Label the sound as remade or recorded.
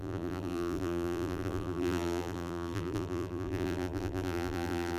remade